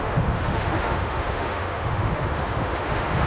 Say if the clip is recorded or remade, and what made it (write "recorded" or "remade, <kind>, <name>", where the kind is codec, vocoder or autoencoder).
remade, autoencoder, DAC-VAE